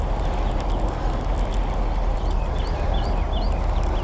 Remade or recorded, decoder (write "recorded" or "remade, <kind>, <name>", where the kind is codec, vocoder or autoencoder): recorded